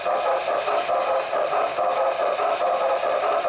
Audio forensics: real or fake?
real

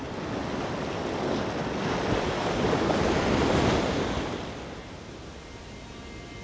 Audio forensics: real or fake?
real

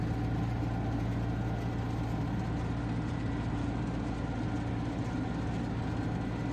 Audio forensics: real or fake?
real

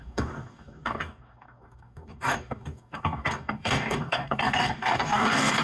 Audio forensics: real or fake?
fake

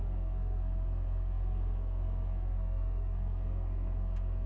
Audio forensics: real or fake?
fake